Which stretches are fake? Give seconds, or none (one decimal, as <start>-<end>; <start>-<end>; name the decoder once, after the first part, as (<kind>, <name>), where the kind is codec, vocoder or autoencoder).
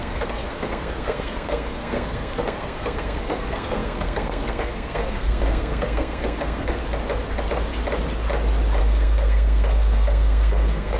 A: 0.0-6.8 (codec, SNAC); 8.8-11.0